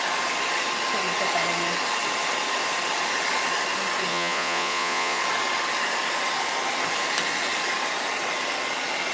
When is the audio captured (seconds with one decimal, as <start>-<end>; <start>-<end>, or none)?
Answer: 0.0-4.1; 5.2-9.1